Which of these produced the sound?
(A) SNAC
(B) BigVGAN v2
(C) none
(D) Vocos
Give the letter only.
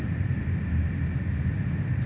C